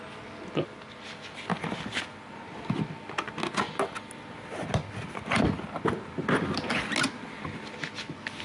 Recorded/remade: recorded